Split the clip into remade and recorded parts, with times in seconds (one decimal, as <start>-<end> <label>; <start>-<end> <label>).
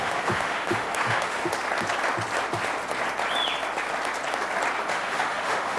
0.0-1.4 remade; 1.4-4.9 recorded; 4.9-5.8 remade